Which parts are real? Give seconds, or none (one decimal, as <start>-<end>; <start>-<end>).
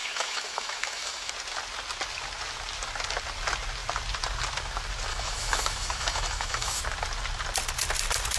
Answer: 1.3-5.1; 6.8-8.4